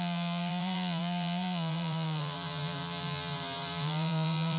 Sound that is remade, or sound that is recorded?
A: remade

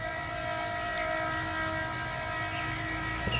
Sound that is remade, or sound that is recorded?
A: recorded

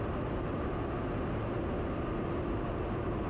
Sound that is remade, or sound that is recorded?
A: recorded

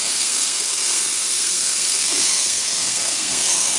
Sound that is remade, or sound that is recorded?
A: remade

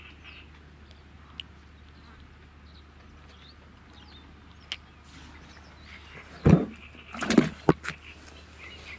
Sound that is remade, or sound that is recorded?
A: recorded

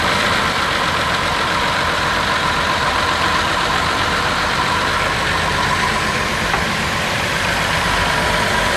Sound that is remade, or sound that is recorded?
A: remade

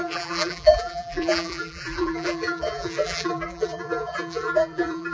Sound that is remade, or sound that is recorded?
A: remade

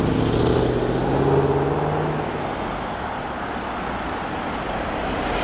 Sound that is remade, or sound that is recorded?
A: recorded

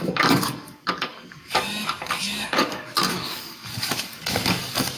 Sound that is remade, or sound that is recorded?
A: remade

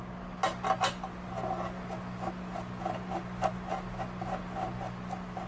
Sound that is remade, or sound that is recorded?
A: recorded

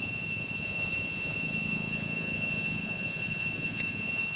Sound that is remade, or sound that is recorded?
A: remade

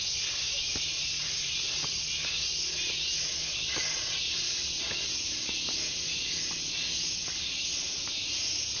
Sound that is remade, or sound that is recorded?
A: recorded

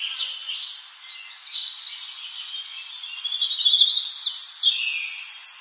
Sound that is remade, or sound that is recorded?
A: recorded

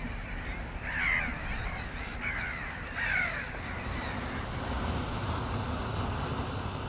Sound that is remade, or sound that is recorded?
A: recorded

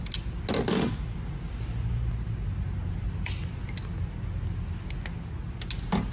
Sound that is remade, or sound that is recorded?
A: recorded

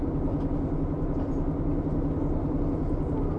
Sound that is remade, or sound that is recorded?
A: recorded